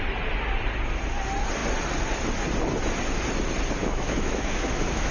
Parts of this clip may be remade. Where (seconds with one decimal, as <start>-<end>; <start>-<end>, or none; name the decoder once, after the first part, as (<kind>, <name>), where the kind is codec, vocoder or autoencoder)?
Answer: 3.8-5.1 (autoencoder, DAC-VAE)